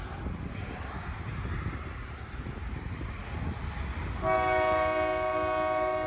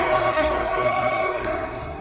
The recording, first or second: first